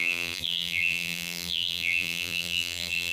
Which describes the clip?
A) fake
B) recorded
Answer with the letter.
A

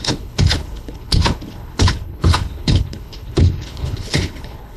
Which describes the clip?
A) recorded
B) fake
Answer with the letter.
B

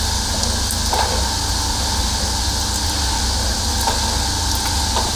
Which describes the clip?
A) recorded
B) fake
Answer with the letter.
A